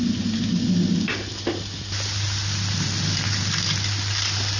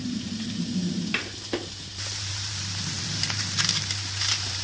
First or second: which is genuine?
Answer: first